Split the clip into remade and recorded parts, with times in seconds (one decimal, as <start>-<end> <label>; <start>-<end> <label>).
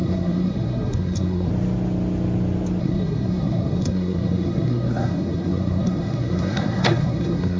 0.0-1.5 remade; 1.5-2.8 recorded; 2.8-7.6 remade